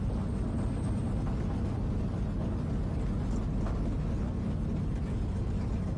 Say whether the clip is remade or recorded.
recorded